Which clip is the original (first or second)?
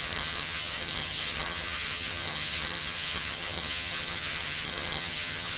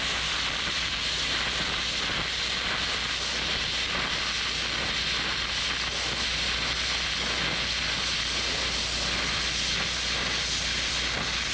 second